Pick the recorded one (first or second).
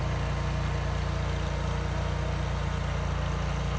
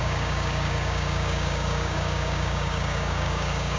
first